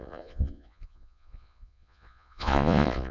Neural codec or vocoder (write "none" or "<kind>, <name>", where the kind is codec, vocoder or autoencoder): vocoder, Vocos